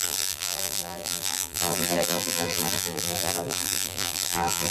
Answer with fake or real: fake